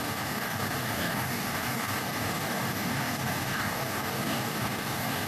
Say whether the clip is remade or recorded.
remade